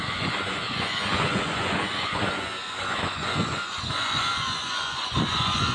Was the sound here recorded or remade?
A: remade